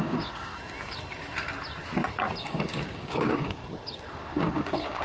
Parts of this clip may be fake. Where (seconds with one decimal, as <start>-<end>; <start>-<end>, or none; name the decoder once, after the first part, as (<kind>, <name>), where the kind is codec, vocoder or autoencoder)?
0.0-0.5 (codec, DAC); 2.4-3.6; 4.3-5.0